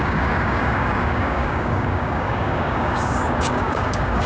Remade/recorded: remade